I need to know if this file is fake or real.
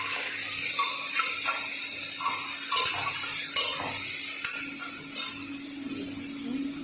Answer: real